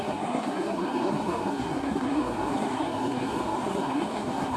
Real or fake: fake